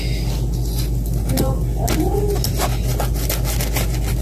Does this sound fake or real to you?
real